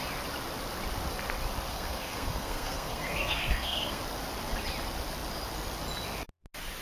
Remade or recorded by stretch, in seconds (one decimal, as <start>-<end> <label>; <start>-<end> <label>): 0.0-1.7 recorded; 1.7-4.0 remade; 4.0-6.8 recorded